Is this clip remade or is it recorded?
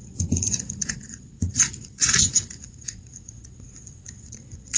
remade